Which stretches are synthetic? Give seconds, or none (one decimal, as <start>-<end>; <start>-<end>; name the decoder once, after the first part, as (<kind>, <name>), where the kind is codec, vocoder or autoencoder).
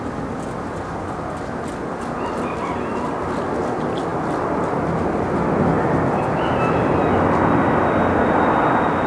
none